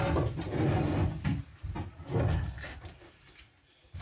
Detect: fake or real real